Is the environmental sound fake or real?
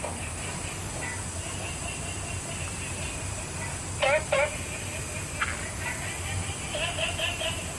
real